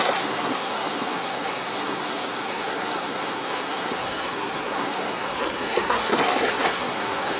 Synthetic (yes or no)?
yes